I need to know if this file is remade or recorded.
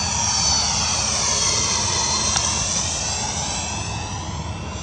recorded